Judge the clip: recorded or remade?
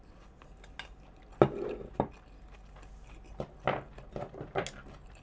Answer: recorded